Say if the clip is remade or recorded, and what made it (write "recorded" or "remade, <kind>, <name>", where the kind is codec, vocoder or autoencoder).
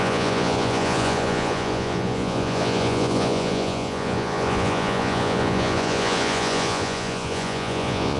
remade, vocoder, Vocos